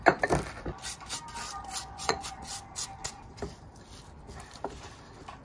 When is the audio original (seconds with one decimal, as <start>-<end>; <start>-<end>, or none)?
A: 0.0-1.8; 2.5-5.4